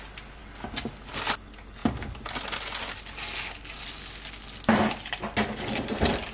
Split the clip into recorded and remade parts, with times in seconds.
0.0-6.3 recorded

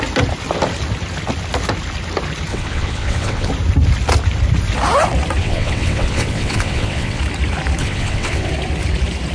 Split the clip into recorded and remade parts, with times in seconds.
0.0-2.5 recorded; 2.5-3.5 remade; 3.5-5.4 recorded; 5.4-7.2 remade; 7.2-7.8 recorded; 7.8-8.5 remade; 8.5-9.3 recorded

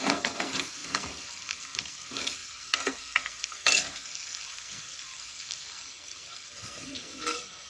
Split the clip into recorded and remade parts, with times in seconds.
0.0-7.7 remade

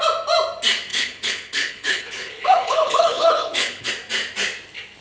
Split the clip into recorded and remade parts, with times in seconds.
0.0-0.9 recorded; 0.9-3.9 remade; 3.9-5.0 recorded